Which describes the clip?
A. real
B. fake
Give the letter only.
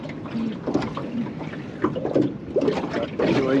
A